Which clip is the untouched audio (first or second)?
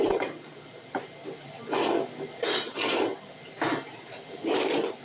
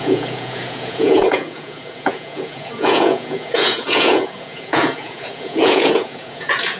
first